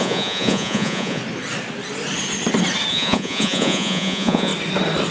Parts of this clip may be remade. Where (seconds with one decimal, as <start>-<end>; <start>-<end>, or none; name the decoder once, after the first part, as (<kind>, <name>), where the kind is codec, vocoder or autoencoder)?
0.0-1.2 (vocoder, Vocos); 2.9-4.5